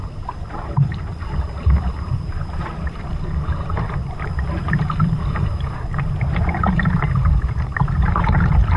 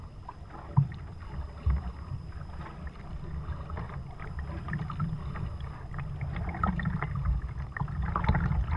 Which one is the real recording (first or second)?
second